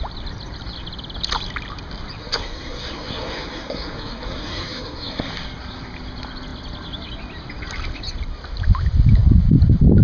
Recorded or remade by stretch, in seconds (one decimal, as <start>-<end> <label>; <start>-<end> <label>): 0.0-2.2 recorded; 2.2-5.3 remade; 5.3-10.0 recorded